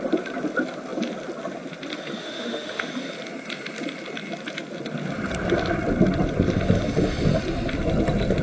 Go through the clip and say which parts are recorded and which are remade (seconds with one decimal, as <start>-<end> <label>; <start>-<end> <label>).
0.0-2.2 recorded; 2.2-2.9 remade; 2.9-8.4 recorded